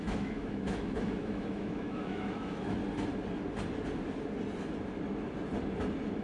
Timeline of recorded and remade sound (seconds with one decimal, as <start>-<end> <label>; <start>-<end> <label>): 0.0-2.8 remade; 2.8-6.2 recorded